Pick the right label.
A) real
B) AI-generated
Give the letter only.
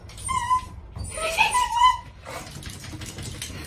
A